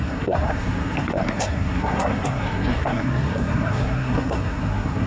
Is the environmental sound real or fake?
fake